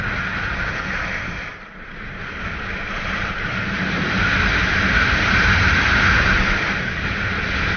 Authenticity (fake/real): real